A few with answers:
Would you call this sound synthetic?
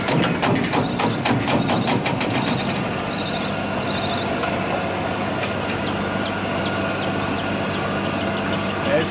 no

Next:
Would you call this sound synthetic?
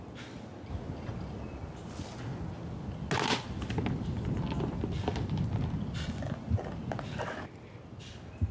no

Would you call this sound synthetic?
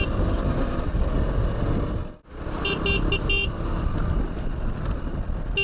no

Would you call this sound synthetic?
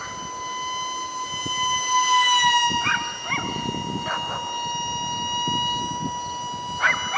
no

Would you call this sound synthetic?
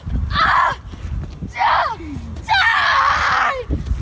no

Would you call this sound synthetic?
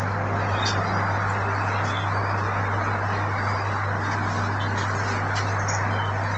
no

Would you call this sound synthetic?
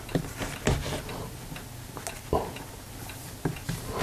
no